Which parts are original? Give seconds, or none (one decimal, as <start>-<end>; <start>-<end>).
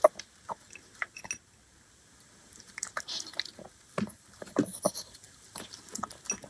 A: 0.0-6.5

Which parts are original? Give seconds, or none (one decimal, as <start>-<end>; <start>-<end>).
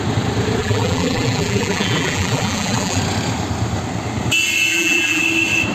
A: 0.0-0.6; 3.0-4.7; 5.2-5.7